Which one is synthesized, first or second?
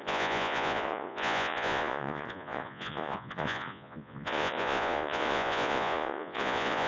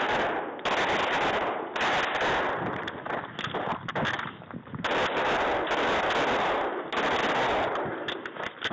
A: first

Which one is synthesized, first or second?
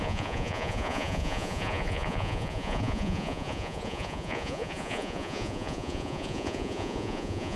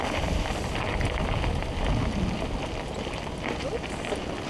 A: first